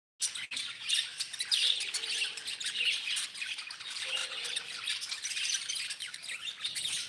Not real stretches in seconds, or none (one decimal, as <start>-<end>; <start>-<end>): none